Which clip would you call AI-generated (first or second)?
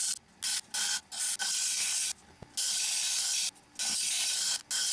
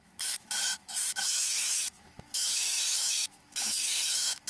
second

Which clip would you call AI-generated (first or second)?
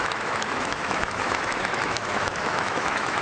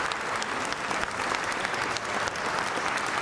first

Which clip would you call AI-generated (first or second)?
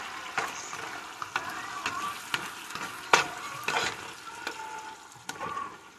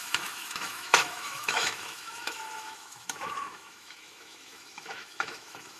second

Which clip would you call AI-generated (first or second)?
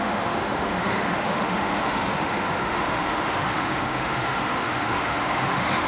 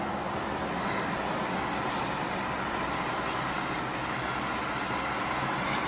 first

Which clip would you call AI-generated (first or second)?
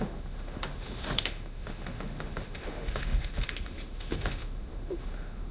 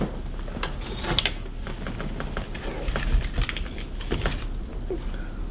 first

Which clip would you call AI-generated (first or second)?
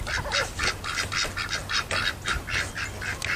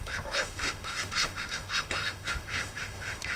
second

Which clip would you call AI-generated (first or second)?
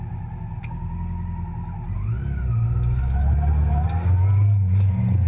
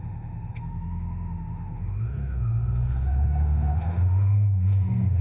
second